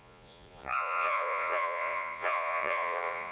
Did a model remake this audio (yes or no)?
yes